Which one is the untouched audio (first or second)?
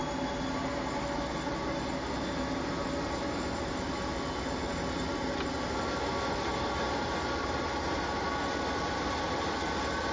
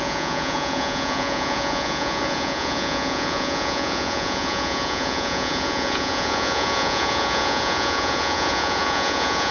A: first